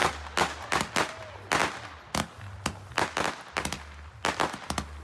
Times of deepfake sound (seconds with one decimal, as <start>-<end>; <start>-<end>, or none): none